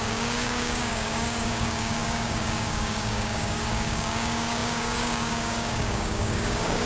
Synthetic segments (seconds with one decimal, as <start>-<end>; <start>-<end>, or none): 0.0-6.9